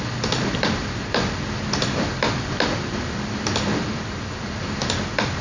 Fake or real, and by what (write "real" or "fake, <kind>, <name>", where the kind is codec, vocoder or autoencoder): fake, vocoder, BigVGAN v2